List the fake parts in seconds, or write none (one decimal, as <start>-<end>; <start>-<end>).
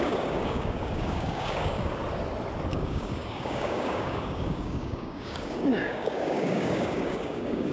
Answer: 0.0-2.0; 2.7-7.7